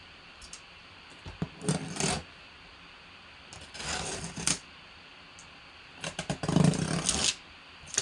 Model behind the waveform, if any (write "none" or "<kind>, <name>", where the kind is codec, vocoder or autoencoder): none